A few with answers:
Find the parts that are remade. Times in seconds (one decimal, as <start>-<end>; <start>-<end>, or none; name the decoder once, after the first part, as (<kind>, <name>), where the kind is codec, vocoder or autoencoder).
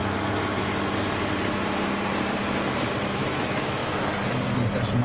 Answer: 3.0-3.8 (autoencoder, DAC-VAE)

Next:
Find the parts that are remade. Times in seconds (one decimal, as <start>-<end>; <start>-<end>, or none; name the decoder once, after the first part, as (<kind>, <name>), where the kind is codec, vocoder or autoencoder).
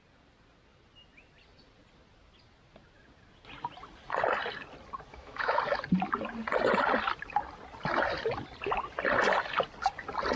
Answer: 5.1-5.6 (autoencoder, DAC-VAE)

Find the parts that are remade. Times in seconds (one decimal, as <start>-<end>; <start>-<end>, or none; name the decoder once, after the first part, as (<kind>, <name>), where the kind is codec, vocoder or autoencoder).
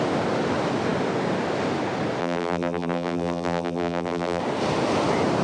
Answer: 2.2-4.4 (vocoder, BigVGAN v2)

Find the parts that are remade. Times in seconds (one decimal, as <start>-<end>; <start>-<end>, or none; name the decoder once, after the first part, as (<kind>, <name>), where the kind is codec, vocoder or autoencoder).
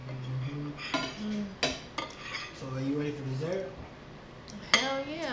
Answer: none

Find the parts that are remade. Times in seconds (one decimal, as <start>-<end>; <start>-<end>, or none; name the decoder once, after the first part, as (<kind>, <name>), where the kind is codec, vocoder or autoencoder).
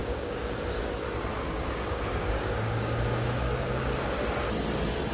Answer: 0.0-0.7 (codec, DAC); 1.3-4.2